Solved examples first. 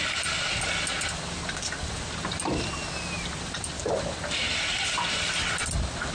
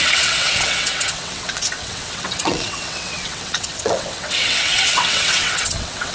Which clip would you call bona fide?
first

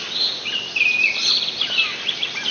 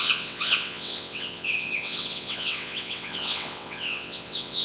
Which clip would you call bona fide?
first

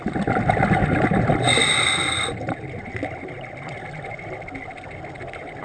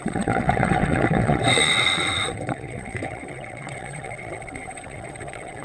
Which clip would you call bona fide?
first